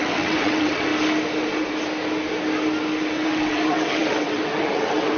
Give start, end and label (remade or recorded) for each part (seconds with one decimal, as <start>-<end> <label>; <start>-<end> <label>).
0.0-0.9 remade; 0.9-3.1 recorded; 3.1-5.2 remade